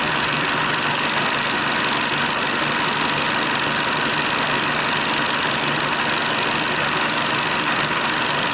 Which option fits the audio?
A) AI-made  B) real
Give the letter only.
B